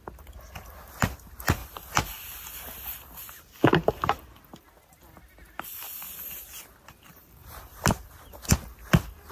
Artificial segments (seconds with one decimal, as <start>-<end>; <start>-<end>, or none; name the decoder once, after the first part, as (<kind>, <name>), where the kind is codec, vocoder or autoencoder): 7.4-8.1 (vocoder, BigVGAN v2)